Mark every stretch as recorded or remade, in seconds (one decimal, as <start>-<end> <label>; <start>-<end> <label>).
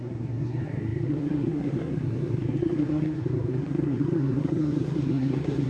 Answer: 0.0-5.7 remade